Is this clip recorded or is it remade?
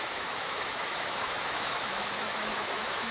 remade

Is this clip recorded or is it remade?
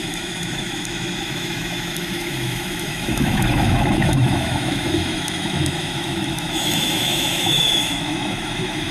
remade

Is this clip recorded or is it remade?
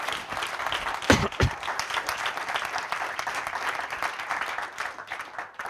recorded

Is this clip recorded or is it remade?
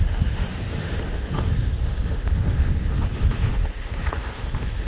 remade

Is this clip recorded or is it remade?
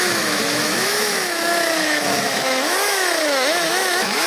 remade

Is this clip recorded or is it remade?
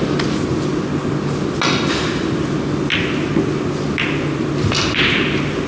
recorded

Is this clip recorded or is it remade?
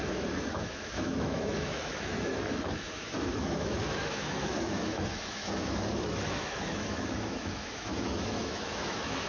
remade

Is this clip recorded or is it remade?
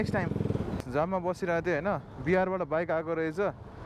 recorded